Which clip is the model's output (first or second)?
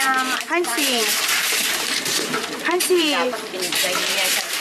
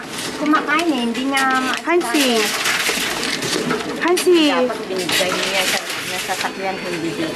first